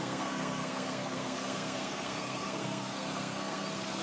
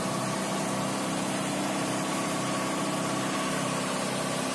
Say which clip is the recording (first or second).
second